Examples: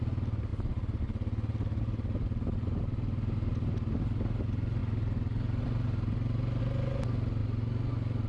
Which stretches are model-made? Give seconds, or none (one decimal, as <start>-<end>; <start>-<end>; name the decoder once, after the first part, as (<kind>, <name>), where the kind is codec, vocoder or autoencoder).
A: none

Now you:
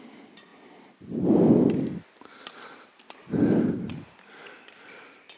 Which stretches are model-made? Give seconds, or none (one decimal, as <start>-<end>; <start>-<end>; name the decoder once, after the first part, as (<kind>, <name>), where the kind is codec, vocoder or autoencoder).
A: 0.5-3.7 (vocoder, BigVGAN v2)

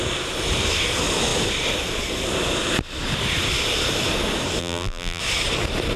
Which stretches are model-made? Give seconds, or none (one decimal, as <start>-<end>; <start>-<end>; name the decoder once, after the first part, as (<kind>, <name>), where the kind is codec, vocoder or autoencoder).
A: 4.6-5.2 (vocoder, BigVGAN v2)

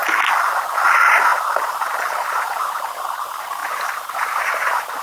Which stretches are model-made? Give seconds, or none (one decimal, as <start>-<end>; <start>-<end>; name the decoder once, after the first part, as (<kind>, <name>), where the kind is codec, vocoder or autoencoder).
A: 0.9-5.0 (vocoder, BigVGAN v2)

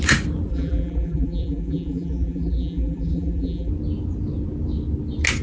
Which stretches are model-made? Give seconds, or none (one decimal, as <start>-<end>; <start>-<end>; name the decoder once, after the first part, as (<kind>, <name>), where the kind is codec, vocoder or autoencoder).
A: 0.5-3.7 (vocoder, BigVGAN v2)